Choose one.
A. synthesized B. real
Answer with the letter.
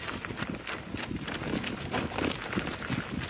B